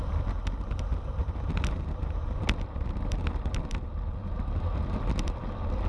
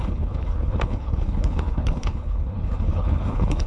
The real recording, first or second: first